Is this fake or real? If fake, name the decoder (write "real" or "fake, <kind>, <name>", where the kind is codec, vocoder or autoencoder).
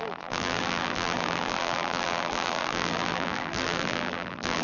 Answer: fake, vocoder, BigVGAN v2